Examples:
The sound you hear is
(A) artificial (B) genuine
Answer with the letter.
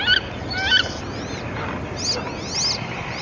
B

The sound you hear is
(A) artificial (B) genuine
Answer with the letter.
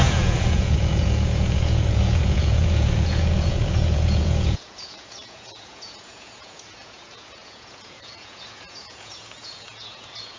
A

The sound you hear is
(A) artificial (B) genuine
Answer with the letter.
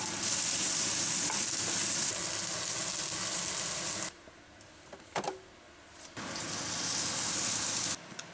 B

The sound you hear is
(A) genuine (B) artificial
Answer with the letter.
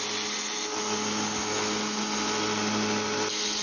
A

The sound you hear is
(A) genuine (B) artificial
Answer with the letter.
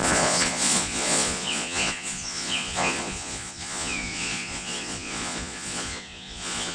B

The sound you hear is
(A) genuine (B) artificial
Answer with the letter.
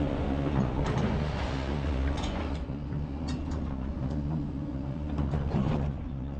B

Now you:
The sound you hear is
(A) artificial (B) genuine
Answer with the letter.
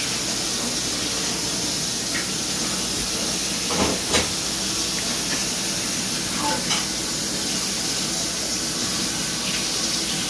B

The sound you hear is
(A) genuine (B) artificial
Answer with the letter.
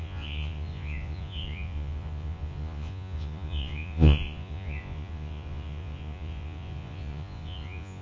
B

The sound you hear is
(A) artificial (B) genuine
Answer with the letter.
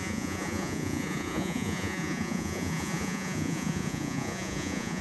A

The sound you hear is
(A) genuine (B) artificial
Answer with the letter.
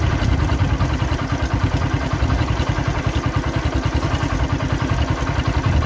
A